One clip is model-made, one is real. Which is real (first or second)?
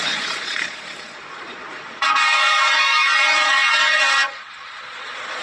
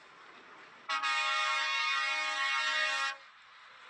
second